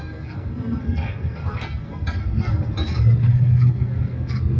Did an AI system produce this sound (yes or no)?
yes